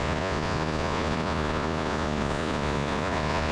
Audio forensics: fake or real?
fake